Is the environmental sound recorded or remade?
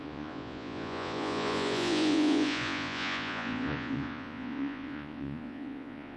remade